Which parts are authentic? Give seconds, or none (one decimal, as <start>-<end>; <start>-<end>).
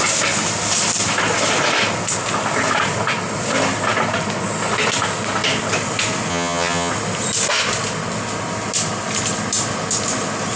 0.0-6.3; 6.9-10.6